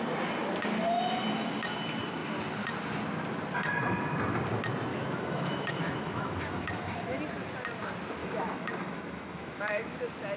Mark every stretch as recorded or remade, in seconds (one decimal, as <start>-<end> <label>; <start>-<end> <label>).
0.0-4.9 recorded; 4.9-7.2 remade; 7.2-8.2 recorded; 8.2-10.0 remade; 10.0-10.4 recorded